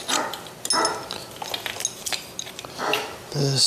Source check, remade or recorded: recorded